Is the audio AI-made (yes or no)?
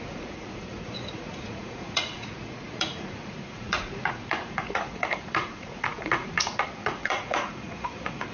yes